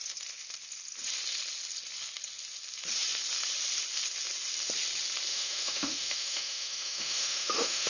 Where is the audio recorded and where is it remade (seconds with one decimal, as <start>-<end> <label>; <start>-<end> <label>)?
0.0-5.3 recorded; 5.3-7.9 remade